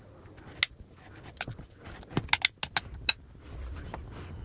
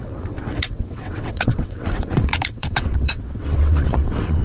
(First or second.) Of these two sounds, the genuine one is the first